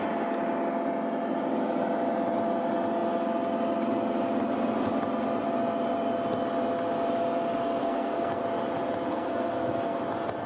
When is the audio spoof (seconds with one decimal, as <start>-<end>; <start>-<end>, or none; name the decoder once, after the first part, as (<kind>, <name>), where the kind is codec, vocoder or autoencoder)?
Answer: 7.8-8.4 (codec, SNAC); 9.1-10.0